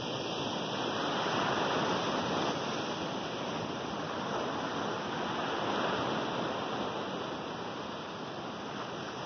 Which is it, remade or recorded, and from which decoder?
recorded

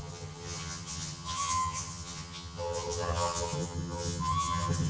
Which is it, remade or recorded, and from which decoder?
remade, vocoder, HiFi-GAN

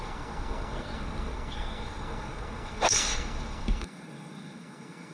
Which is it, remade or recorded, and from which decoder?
remade, codec, SNAC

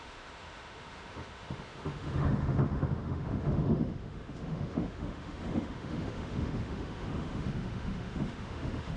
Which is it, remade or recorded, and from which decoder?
remade, autoencoder, DAC-VAE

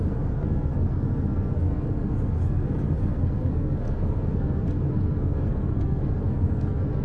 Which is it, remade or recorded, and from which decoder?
remade, codec, SNAC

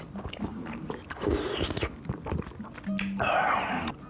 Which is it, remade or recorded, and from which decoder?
recorded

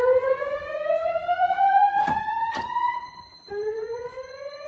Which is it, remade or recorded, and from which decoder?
remade, vocoder, Vocos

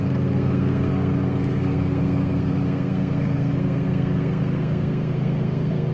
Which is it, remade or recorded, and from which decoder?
remade, codec, SNAC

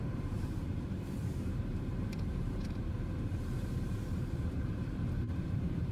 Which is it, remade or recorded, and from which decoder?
remade, vocoder, BigVGAN v2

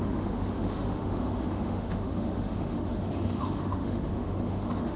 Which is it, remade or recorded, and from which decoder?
remade, autoencoder, DAC-VAE